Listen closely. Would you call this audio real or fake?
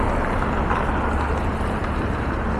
real